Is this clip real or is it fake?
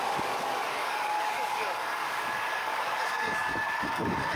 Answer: fake